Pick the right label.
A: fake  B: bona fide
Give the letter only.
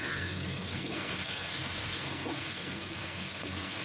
A